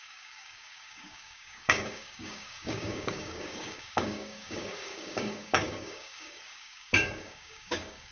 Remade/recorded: remade